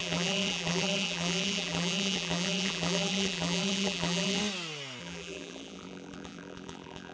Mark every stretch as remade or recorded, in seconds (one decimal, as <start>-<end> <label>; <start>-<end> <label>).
0.0-4.4 remade; 4.4-5.0 recorded; 5.0-7.1 remade